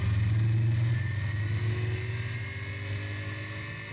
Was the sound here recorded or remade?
recorded